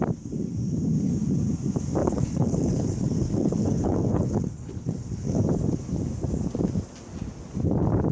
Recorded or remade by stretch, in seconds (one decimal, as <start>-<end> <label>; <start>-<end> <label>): 0.0-2.0 recorded; 2.0-5.4 remade; 5.4-8.1 recorded